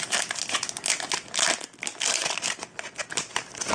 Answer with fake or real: real